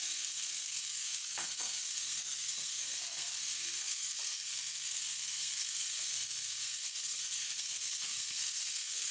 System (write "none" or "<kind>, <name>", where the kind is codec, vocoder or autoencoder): codec, SNAC